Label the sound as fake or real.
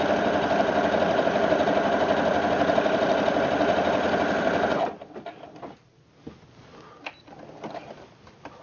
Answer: real